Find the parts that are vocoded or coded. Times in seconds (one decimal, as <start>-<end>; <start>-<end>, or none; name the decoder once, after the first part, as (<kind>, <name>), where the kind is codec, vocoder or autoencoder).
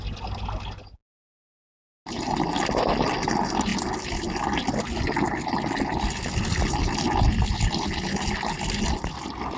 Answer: none